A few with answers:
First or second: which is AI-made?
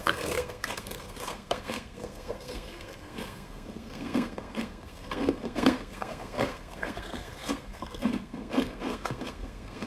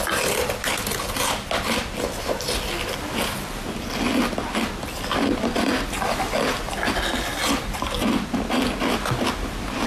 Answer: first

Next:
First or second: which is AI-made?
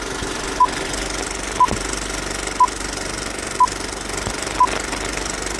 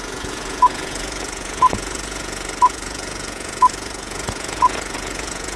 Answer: second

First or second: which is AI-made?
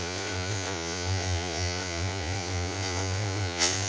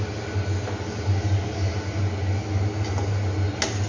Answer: first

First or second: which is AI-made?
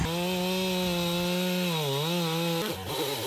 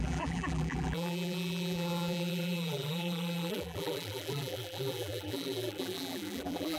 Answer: second